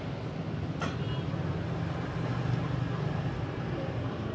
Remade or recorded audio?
recorded